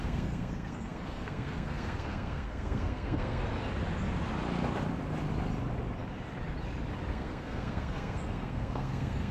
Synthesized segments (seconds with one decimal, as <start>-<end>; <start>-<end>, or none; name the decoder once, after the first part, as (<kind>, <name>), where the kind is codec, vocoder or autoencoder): 0.0-3.4 (codec, SNAC); 7.1-9.3